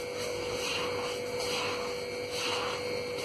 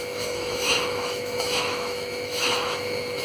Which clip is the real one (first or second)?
first